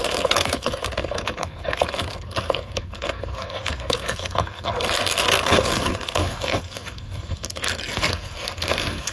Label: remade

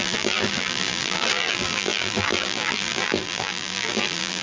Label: remade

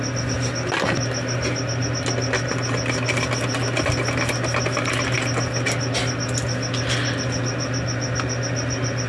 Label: recorded